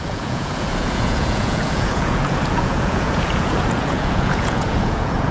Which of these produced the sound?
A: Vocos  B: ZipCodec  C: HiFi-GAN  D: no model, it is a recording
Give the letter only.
A